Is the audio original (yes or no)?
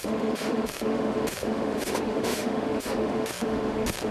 no